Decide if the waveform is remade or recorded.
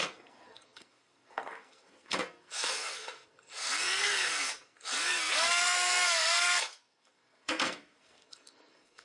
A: remade